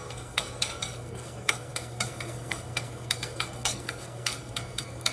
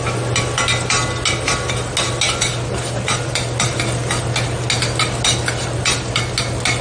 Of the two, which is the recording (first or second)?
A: second